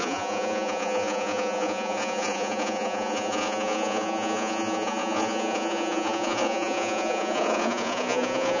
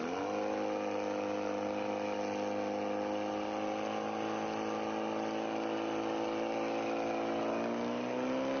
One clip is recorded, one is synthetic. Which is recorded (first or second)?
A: second